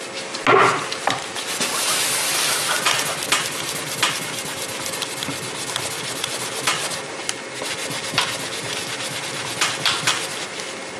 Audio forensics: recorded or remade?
recorded